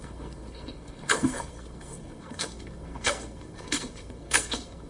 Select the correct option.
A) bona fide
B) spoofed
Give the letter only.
B